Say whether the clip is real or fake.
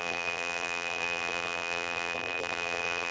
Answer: fake